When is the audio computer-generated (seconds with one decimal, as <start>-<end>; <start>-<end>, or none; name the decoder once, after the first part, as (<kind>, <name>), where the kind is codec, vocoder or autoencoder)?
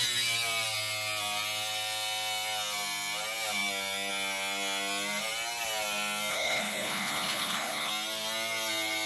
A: 6.3-7.9 (codec, HILCodec)